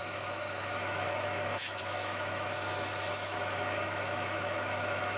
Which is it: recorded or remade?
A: remade